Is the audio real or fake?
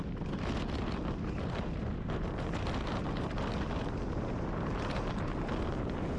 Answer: real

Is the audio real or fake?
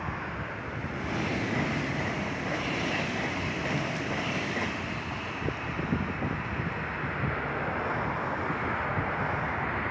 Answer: real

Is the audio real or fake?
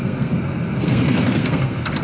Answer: fake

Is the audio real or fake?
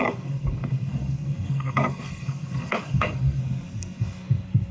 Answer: fake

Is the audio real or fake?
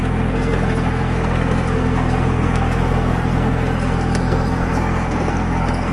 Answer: fake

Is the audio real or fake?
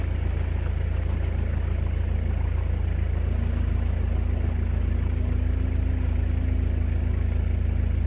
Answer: real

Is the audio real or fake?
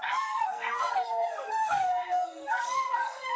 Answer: fake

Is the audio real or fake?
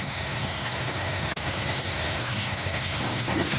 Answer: fake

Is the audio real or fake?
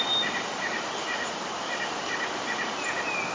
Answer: real